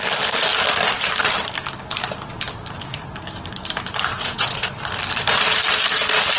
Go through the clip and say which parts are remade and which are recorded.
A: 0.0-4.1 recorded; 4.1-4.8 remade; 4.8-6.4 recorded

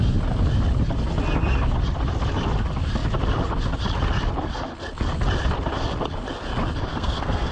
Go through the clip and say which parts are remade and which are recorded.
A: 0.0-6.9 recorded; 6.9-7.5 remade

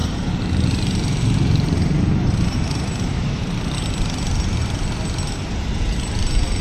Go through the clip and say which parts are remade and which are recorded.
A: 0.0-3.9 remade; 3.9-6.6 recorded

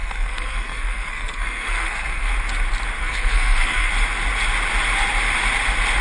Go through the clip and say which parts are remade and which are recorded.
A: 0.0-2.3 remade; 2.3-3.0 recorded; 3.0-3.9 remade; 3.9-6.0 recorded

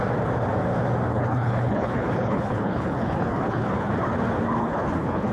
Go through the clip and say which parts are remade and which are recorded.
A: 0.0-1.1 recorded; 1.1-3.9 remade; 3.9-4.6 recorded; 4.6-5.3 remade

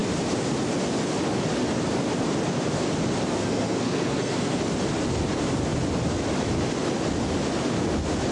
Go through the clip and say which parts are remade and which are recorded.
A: 0.0-3.3 recorded; 3.3-4.6 remade; 4.6-8.3 recorded